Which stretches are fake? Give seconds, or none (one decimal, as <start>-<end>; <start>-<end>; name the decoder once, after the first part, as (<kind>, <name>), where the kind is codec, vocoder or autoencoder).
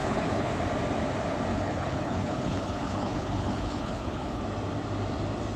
0.0-0.5 (codec, HILCodec); 1.5-4.4